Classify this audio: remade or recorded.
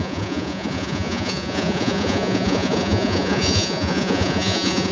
remade